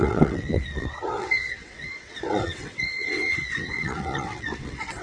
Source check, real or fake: fake